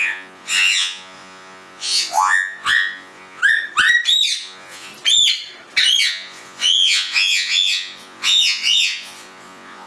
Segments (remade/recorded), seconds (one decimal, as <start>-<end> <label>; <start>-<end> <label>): 0.0-3.4 remade; 3.4-4.4 recorded; 4.4-4.9 remade; 4.9-6.0 recorded; 6.0-9.9 remade